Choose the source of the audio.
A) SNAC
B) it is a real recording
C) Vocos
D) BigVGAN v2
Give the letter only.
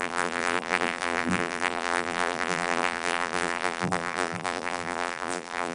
D